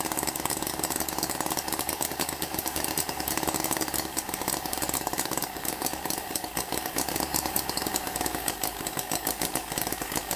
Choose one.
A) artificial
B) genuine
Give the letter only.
A